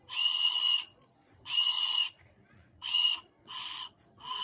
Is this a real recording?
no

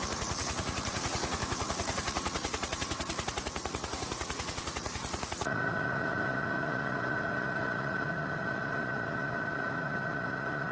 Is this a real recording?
no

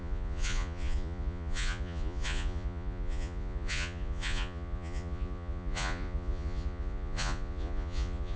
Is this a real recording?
no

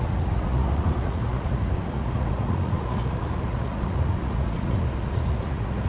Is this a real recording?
no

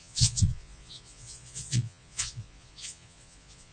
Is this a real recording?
no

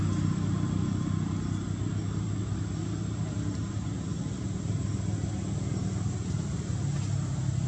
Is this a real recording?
yes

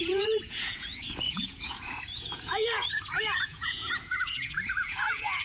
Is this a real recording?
no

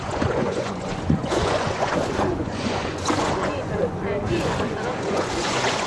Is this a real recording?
no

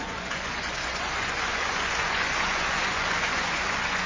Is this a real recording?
no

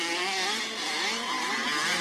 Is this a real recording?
yes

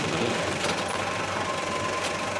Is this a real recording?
yes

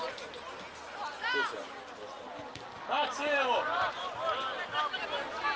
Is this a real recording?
yes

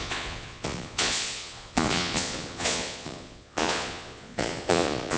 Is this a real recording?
no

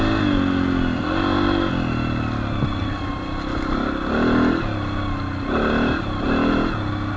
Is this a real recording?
yes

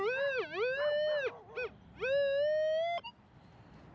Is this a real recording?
yes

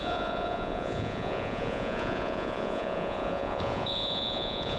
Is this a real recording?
no